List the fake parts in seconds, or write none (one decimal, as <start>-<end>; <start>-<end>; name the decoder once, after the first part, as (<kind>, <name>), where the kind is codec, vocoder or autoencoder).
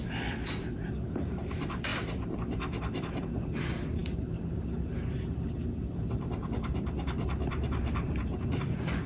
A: 0.0-9.1 (vocoder, BigVGAN v2)